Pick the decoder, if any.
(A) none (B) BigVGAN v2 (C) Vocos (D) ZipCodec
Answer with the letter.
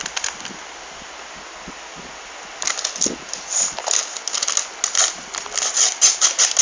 A